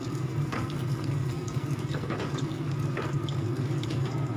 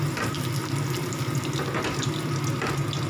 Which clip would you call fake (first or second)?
first